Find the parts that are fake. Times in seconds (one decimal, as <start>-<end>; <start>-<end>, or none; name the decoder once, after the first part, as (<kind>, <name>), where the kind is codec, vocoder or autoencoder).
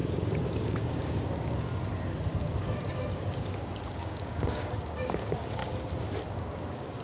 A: 0.0-1.7 (codec, DAC); 2.4-5.6; 6.3-7.0